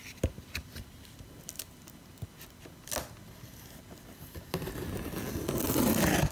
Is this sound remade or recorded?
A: recorded